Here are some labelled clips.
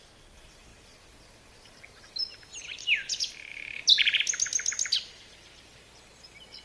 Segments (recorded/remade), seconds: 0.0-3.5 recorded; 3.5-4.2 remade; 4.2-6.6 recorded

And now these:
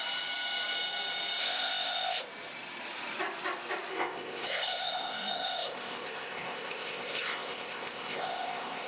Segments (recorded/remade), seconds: 0.0-1.4 recorded; 1.4-2.2 remade; 2.2-3.9 recorded; 3.9-8.9 remade

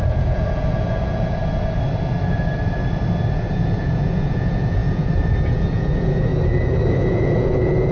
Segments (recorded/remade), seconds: 0.0-1.4 remade; 1.4-3.3 recorded; 3.3-6.3 remade; 6.3-6.9 recorded; 6.9-7.9 remade